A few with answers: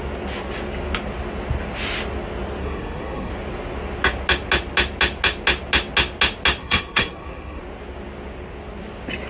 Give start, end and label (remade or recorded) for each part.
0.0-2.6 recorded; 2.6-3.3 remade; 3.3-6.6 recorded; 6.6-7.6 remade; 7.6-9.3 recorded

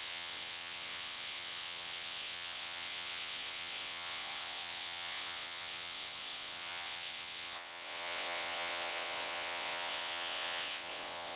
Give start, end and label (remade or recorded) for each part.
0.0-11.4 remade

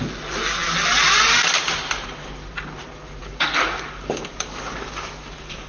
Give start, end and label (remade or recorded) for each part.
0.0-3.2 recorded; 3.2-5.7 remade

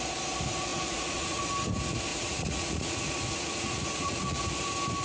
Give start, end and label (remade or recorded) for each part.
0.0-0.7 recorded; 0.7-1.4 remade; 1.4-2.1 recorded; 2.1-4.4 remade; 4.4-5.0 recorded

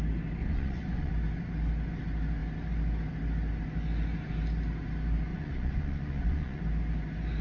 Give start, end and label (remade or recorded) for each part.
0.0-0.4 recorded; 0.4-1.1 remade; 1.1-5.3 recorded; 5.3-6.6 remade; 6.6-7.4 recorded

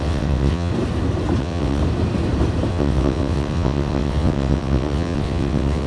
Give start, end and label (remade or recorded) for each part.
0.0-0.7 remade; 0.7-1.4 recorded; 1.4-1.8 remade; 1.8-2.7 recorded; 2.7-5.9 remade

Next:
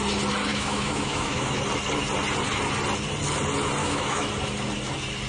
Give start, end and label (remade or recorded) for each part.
0.0-0.5 recorded; 0.5-1.6 remade; 1.6-3.8 recorded; 3.8-4.3 remade; 4.3-5.3 recorded

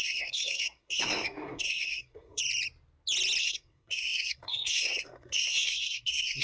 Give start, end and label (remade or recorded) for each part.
0.0-2.4 remade; 2.4-3.4 recorded; 3.4-6.4 remade